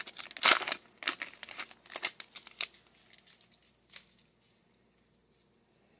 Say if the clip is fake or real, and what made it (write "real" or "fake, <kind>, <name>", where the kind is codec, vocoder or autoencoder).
real